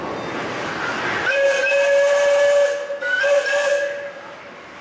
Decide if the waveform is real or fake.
real